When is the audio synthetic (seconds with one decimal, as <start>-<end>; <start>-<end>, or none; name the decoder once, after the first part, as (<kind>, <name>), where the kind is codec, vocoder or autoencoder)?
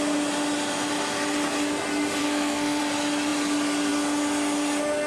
2.2-2.8 (codec, SNAC)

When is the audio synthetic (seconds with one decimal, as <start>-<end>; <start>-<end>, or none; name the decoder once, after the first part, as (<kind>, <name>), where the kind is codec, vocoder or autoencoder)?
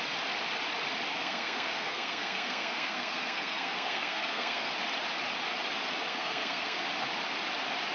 1.1-4.7 (codec, SNAC); 6.1-6.8